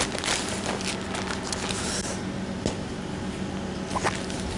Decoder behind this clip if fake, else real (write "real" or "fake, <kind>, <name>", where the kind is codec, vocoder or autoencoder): real